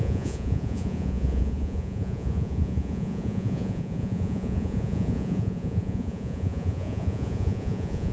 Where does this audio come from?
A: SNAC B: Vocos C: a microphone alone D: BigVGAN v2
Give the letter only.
B